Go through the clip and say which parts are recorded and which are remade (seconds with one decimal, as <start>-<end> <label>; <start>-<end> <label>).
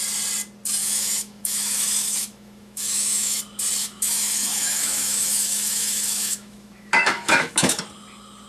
0.0-0.8 recorded; 0.8-3.4 remade; 3.4-3.8 recorded; 3.8-7.8 remade; 7.8-8.5 recorded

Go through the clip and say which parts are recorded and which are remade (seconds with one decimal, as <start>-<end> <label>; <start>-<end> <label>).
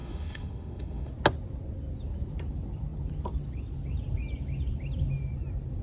0.0-1.1 remade; 1.1-5.8 recorded